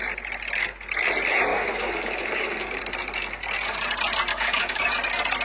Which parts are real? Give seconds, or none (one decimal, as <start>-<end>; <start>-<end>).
0.0-1.5; 2.8-4.3; 4.9-5.4